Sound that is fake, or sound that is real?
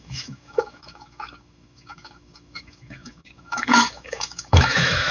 fake